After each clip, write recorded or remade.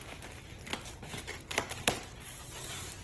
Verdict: recorded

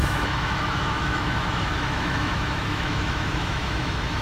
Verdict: remade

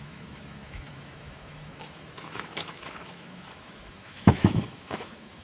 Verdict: remade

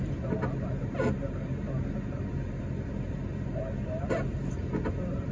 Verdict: recorded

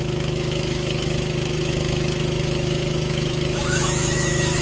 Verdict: remade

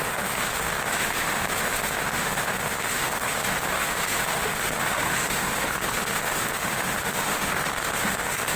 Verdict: remade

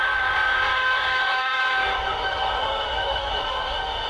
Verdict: remade